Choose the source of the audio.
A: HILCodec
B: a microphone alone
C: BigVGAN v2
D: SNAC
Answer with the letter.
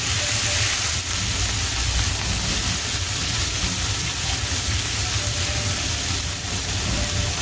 B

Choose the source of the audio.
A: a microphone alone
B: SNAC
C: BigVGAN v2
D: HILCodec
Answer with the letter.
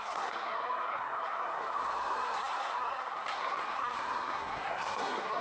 B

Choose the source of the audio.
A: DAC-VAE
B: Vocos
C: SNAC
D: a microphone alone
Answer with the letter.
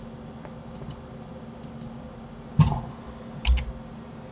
D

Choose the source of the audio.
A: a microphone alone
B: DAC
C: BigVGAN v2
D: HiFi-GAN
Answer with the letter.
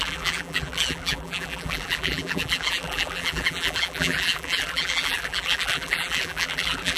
C